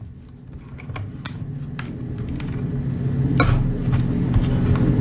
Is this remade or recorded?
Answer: recorded